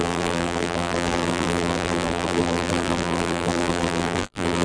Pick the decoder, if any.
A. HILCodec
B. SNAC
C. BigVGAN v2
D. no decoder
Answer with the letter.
C